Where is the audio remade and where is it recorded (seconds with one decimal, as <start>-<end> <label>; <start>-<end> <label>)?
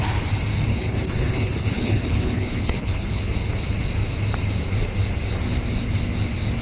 0.0-0.7 recorded; 0.7-3.2 remade; 3.2-6.6 recorded